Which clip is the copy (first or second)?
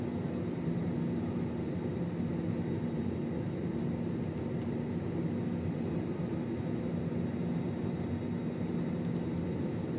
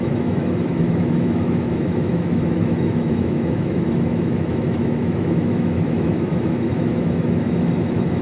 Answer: second